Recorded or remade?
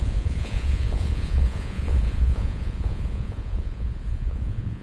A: remade